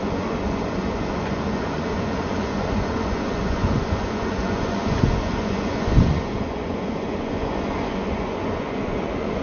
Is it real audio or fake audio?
fake